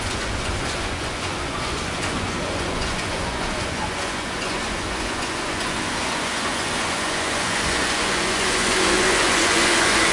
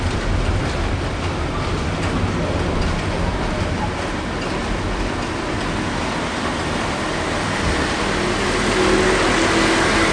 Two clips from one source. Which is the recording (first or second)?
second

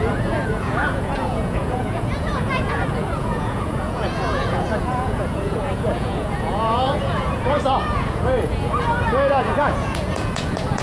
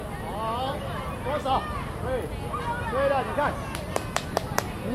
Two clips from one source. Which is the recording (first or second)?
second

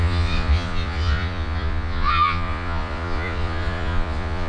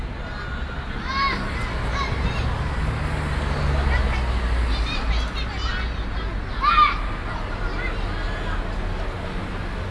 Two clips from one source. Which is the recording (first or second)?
second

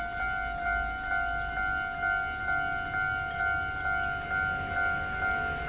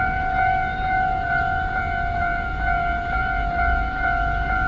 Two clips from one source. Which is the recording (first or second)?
first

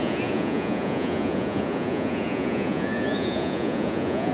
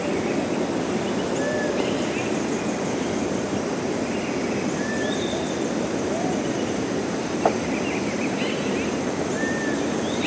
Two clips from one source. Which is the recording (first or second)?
second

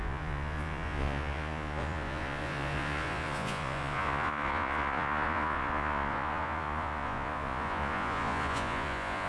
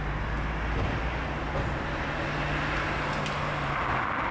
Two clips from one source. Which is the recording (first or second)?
second